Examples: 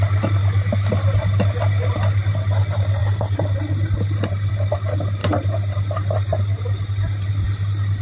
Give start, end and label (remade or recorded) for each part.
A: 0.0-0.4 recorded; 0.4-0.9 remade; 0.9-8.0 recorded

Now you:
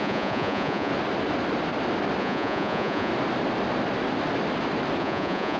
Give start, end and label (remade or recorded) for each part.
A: 0.0-0.9 remade; 0.9-2.2 recorded; 2.2-3.1 remade; 3.1-5.0 recorded; 5.0-5.6 remade

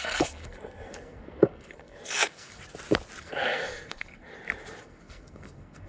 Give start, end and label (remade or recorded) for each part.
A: 0.0-2.6 remade; 2.6-3.2 recorded; 3.2-4.3 remade; 4.3-4.8 recorded; 4.8-5.9 remade

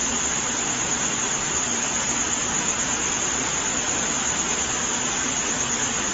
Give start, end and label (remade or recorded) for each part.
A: 0.0-3.1 recorded; 3.1-6.1 remade

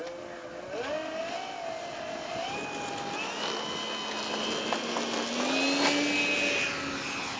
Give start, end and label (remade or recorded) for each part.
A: 0.0-7.4 recorded

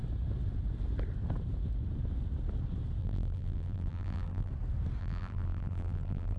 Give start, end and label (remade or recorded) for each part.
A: 0.0-3.0 recorded; 3.0-4.5 remade; 4.5-5.0 recorded; 5.0-6.4 remade

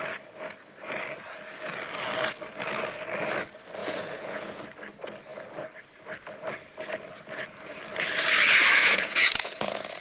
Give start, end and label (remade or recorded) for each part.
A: 0.0-3.8 recorded; 3.8-4.6 remade; 4.6-8.8 recorded; 8.8-10.0 remade